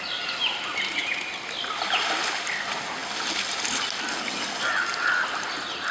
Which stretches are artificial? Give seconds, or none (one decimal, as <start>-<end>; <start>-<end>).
none